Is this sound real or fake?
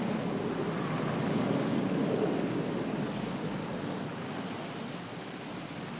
real